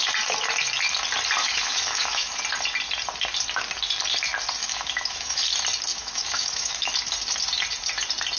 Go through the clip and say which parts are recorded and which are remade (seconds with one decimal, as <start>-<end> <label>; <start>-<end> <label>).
0.0-1.4 recorded; 1.4-2.4 remade; 2.4-4.6 recorded; 4.6-5.4 remade; 5.4-5.9 recorded; 5.9-6.9 remade; 6.9-8.4 recorded